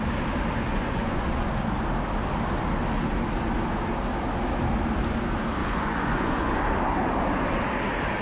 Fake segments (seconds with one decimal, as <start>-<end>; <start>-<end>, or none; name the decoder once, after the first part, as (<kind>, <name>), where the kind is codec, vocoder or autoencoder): 0.7-1.5 (vocoder, Vocos); 5.6-6.6